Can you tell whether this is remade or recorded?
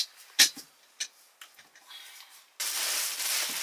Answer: recorded